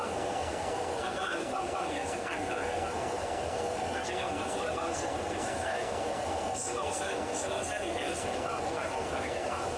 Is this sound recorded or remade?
remade